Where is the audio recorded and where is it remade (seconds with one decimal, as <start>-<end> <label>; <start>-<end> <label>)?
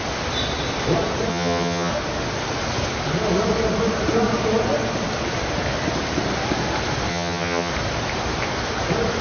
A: 0.0-1.3 recorded; 1.3-1.9 remade; 1.9-7.1 recorded; 7.1-7.7 remade; 7.7-9.2 recorded